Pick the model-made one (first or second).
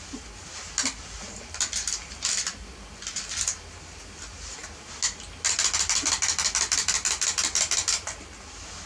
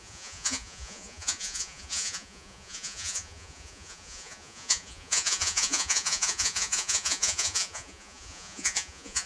second